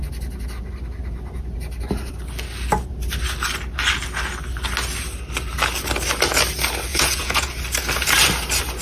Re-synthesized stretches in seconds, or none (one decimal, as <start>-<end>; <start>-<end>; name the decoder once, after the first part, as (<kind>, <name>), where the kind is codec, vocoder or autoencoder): 6.9-7.5 (vocoder, Vocos)